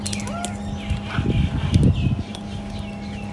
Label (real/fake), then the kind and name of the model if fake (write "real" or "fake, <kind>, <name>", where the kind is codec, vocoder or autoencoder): real